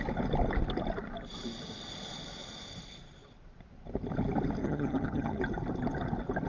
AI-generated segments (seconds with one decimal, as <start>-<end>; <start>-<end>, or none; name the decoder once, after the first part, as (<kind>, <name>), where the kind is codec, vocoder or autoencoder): 4.6-5.4 (vocoder, HiFi-GAN)